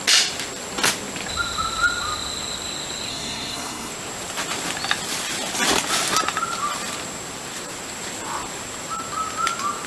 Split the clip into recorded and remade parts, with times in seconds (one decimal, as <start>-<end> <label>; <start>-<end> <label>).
0.0-3.1 recorded; 3.1-3.9 remade; 3.9-9.9 recorded